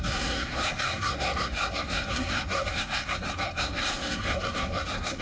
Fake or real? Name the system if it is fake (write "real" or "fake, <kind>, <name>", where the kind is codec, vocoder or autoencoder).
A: fake, codec, SNAC